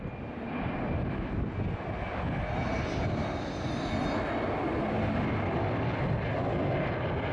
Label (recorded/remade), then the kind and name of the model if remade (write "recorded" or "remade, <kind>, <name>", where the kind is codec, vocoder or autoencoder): recorded